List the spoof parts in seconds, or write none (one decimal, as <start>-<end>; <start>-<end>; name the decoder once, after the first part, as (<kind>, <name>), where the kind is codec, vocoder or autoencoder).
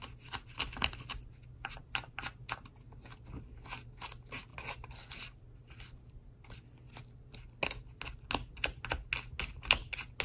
none